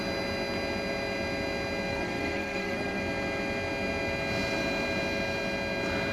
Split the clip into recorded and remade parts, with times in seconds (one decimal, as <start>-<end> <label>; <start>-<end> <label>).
0.0-1.9 recorded; 1.9-3.0 remade; 3.0-6.1 recorded